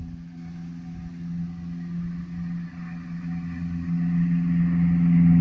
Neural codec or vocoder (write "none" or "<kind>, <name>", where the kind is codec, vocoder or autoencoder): none